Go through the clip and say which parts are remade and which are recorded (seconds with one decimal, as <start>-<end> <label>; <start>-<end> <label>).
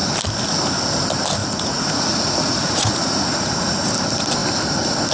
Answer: 0.0-1.4 recorded; 1.4-3.9 remade; 3.9-5.1 recorded